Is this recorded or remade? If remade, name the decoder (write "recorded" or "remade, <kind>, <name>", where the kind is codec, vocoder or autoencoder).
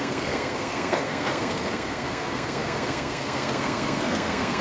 remade, codec, SNAC